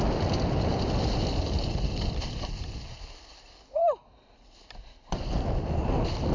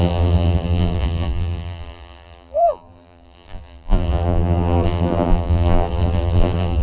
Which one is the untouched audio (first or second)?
first